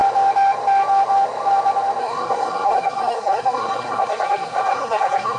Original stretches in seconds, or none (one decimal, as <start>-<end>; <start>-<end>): 0.0-2.0